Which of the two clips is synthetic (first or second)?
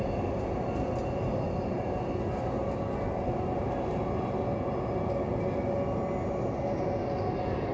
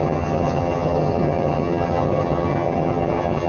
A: second